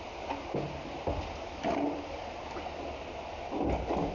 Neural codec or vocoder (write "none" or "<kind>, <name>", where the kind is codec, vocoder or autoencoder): none